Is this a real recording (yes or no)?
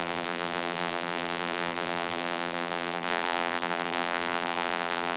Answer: no